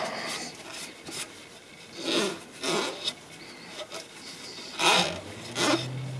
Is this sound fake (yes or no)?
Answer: no